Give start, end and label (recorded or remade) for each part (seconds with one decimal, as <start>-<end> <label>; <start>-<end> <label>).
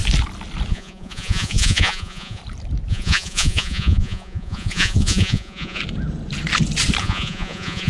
0.0-0.7 recorded; 0.7-2.4 remade; 2.4-2.9 recorded; 2.9-5.8 remade; 5.8-7.0 recorded; 7.0-7.9 remade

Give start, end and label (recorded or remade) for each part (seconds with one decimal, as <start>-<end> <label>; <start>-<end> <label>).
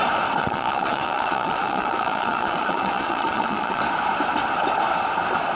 0.0-0.4 recorded; 0.4-3.8 remade; 3.8-5.6 recorded